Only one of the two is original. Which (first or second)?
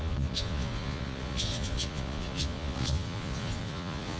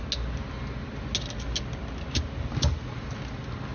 second